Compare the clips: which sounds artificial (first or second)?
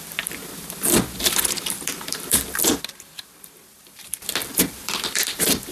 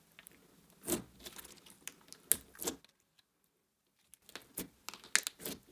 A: first